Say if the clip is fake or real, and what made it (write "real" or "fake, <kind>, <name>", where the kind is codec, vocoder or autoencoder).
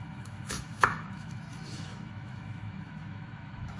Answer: fake, autoencoder, DAC-VAE